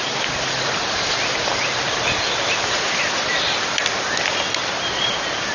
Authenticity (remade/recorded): remade